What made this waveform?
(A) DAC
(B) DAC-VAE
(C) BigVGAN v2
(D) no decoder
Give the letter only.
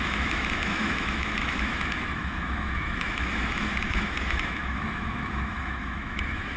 B